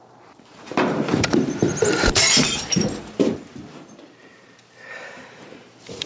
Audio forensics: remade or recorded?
remade